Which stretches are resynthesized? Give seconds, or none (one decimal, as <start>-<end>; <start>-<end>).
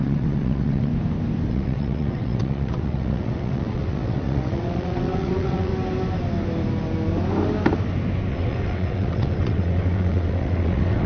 0.0-0.9; 1.5-5.7; 8.3-11.1